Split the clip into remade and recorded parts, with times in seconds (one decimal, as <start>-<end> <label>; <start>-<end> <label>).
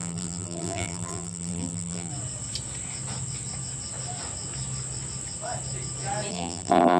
0.0-2.1 remade; 2.1-6.3 recorded; 6.3-7.0 remade